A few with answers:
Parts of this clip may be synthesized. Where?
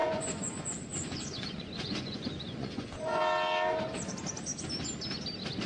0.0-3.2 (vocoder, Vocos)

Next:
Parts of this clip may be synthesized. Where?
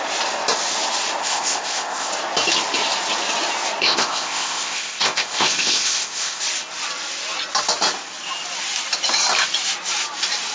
1.2-2.1 (codec, ZipCodec); 3.8-6.4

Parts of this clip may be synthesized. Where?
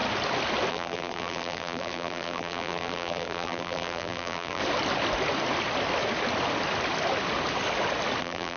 0.7-4.6 (vocoder, BigVGAN v2); 8.2-8.6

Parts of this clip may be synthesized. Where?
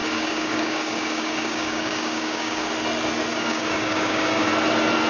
0.0-2.7 (codec, DAC); 3.3-4.5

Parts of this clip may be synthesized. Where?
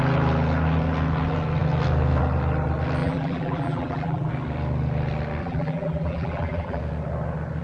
3.0-4.3 (vocoder, BigVGAN v2); 5.4-6.8